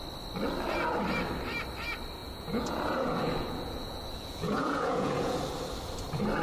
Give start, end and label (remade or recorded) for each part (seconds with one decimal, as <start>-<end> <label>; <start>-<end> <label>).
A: 0.0-2.2 recorded; 2.2-5.4 remade; 5.4-6.4 recorded